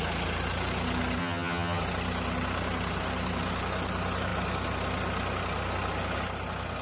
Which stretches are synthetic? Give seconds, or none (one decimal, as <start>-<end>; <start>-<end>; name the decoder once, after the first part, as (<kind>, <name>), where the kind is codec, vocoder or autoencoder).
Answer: 1.2-1.8 (vocoder, HiFi-GAN)